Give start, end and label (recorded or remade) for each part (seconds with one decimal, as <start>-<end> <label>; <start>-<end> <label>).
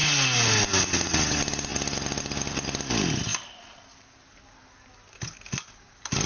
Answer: 0.0-6.3 recorded